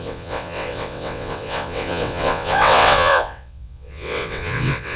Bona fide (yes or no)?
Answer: no